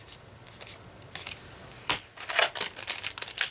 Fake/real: real